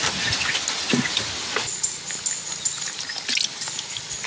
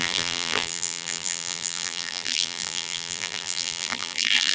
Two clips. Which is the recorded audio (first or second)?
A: first